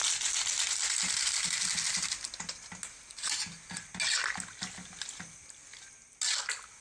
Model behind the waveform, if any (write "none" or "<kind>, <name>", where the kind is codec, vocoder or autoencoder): none